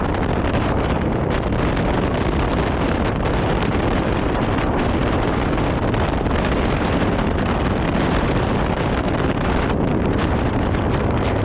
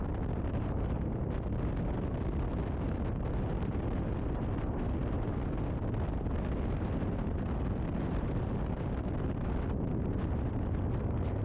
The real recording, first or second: second